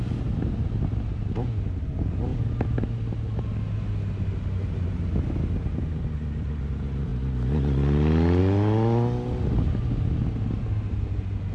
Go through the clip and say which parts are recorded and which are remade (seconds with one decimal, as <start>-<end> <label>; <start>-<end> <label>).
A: 0.0-11.5 recorded